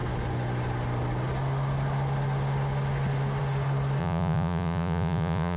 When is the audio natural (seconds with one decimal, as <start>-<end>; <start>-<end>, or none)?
0.0-4.0